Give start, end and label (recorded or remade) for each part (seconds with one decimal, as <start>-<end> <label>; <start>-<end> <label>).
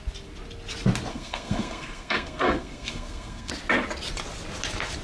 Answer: 0.0-1.1 recorded; 1.1-3.5 remade; 3.5-5.0 recorded